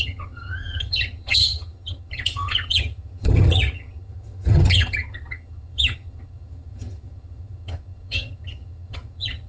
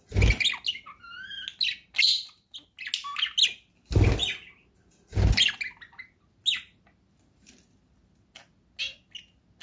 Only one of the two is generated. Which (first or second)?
first